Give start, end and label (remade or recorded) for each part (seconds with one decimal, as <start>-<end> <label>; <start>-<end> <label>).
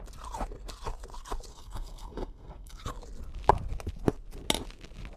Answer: 0.0-1.5 recorded; 1.5-2.8 remade; 2.8-5.2 recorded